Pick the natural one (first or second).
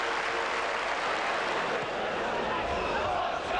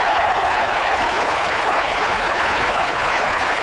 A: first